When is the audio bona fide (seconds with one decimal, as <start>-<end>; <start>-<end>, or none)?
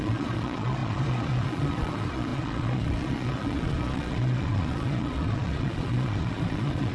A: none